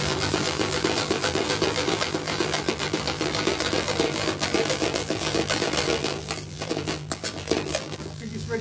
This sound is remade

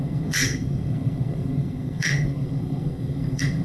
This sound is remade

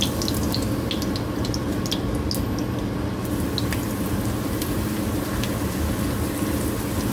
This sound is recorded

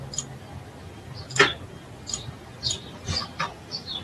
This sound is recorded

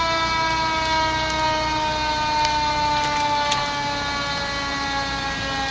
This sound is recorded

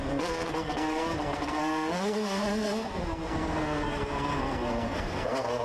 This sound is remade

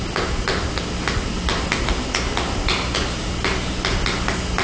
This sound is recorded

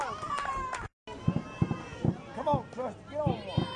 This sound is recorded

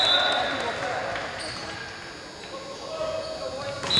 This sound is recorded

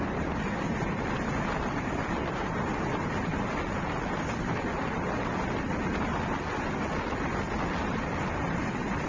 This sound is recorded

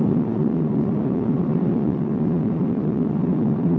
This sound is remade